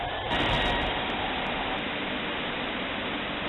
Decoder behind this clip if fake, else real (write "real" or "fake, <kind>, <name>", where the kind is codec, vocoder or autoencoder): real